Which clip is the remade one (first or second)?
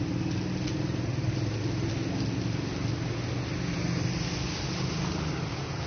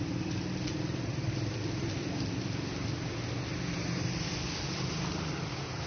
second